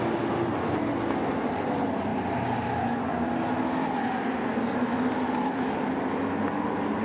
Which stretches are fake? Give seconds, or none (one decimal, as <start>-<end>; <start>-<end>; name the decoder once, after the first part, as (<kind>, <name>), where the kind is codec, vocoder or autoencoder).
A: none